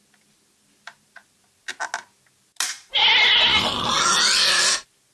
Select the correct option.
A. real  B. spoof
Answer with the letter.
A